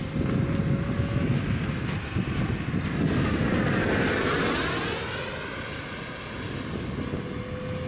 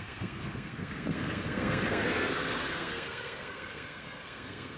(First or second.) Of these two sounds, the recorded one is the first